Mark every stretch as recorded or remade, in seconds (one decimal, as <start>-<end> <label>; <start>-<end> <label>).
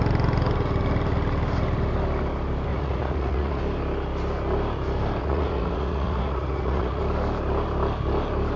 0.0-2.7 recorded; 2.7-3.6 remade; 3.6-5.2 recorded; 5.2-7.0 remade; 7.0-8.6 recorded